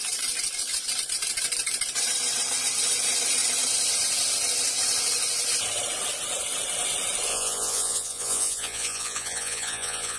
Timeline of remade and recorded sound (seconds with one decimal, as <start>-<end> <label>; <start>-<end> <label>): 0.0-7.3 recorded; 7.3-10.2 remade